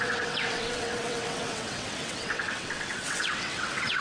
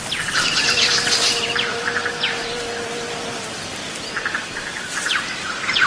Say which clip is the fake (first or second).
first